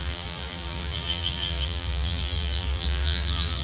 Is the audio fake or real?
fake